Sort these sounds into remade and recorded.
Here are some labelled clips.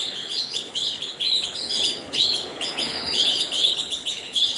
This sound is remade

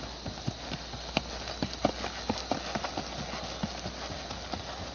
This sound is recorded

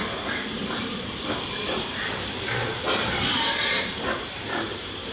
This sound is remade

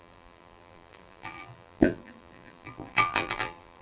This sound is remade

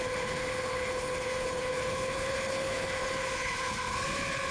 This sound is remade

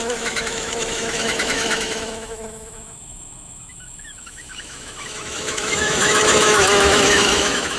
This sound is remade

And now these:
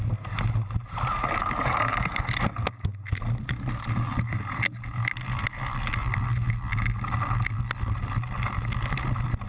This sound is recorded